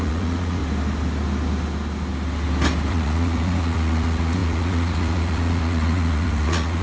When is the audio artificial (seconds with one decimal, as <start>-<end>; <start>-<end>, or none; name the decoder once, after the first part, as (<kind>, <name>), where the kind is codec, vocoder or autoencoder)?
0.0-0.6 (vocoder, Vocos); 2.9-6.8